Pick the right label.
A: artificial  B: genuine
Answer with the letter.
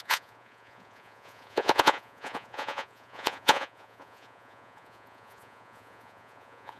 A